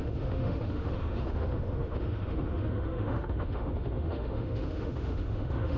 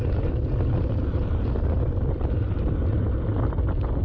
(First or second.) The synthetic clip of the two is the first